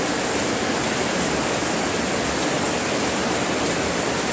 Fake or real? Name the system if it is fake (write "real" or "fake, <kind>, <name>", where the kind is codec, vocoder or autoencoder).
real